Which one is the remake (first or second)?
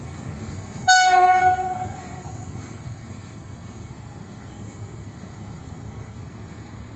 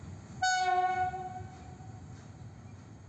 first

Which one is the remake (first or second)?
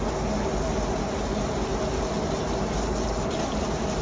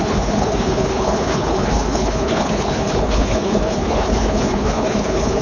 second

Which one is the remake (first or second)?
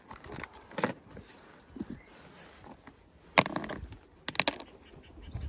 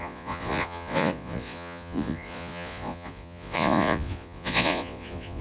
second